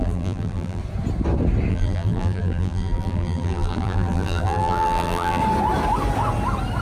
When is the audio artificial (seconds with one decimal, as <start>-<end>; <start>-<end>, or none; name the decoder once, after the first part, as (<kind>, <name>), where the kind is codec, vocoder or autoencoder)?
0.0-0.8 (vocoder, BigVGAN v2); 1.7-5.4